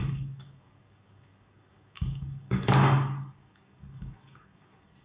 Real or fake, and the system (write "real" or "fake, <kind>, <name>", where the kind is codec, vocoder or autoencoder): fake, codec, DAC